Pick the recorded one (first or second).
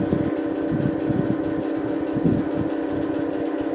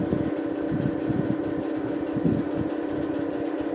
first